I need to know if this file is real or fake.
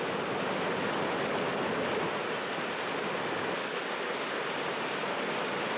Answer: real